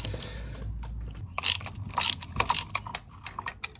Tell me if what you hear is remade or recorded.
recorded